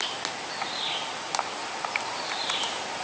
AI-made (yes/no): no